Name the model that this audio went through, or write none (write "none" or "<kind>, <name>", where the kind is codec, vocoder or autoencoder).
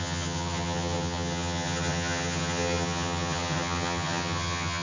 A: vocoder, HiFi-GAN